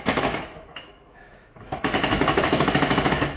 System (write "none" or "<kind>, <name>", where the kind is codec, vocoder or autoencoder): autoencoder, DAC-VAE